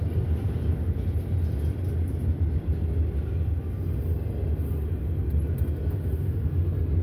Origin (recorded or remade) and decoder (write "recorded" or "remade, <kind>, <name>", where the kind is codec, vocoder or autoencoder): recorded